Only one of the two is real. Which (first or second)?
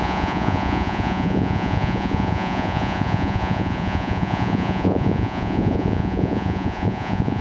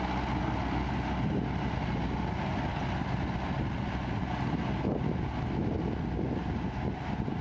second